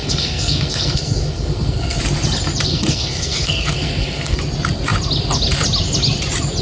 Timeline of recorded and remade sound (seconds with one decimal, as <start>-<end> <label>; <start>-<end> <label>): 0.0-2.0 remade; 2.0-2.7 recorded; 2.7-4.4 remade; 4.4-6.6 recorded